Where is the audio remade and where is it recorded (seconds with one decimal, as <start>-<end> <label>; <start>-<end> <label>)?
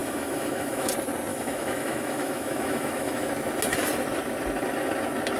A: 0.0-0.9 remade; 0.9-1.3 recorded; 1.3-3.3 remade; 3.3-5.4 recorded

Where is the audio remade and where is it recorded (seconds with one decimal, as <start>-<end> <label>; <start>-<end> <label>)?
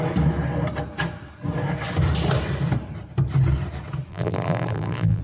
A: 0.0-4.1 recorded; 4.1-5.2 remade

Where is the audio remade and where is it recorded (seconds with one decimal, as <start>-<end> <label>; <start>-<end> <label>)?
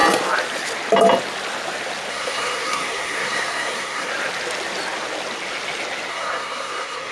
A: 0.0-2.1 recorded; 2.1-4.1 remade; 4.1-6.1 recorded; 6.1-7.1 remade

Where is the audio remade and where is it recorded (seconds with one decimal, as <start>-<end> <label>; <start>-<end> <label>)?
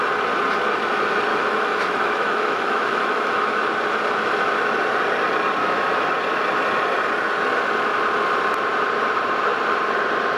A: 0.0-1.3 recorded; 1.3-3.6 remade; 3.6-5.6 recorded; 5.6-6.1 remade; 6.1-10.4 recorded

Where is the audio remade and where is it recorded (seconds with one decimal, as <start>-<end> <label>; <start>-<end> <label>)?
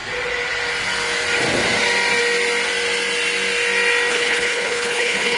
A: 0.0-4.1 recorded; 4.1-5.4 remade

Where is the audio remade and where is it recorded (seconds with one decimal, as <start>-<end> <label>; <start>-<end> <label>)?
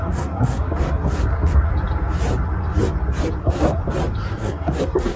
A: 0.0-1.7 remade; 1.7-3.4 recorded; 3.4-3.8 remade; 3.8-4.4 recorded; 4.4-5.2 remade